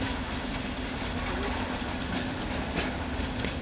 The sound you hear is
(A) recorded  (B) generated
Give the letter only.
A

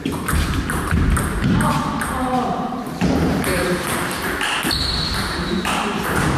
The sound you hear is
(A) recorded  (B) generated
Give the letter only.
B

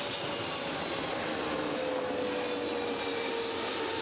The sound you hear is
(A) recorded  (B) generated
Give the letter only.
A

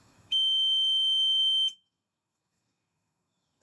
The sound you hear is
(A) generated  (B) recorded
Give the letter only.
A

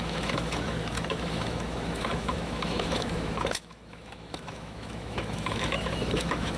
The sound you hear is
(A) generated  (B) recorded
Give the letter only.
A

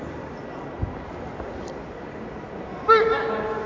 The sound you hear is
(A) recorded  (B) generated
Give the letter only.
A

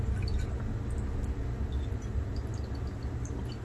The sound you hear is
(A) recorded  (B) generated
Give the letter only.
A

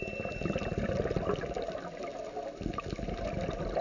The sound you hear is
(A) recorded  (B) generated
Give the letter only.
A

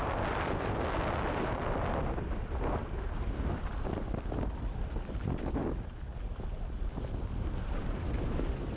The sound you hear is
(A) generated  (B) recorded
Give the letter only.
B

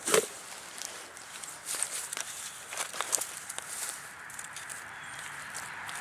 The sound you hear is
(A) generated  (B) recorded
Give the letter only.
A